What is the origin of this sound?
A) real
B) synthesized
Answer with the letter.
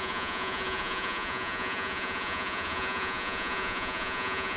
B